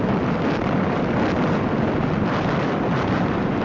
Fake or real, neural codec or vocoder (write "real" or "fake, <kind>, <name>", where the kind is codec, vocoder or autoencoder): fake, vocoder, BigVGAN v2